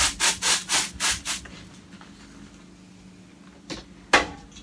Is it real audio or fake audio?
real